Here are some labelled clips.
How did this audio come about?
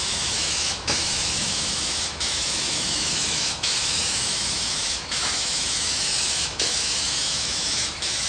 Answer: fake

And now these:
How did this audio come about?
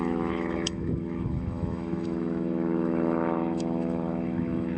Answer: fake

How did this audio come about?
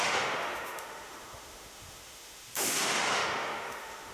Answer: fake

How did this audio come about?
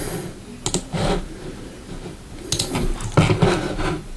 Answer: real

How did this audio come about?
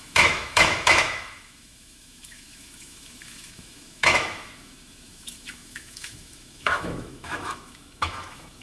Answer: fake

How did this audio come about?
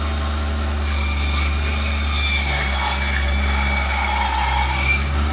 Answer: real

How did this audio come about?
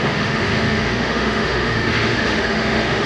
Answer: fake